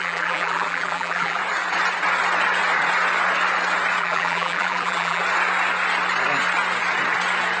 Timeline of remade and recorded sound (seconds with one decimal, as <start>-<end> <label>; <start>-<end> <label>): 0.0-1.4 remade; 1.4-4.0 recorded; 4.0-5.2 remade; 5.2-7.6 recorded